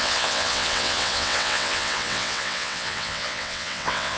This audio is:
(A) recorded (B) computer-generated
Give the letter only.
B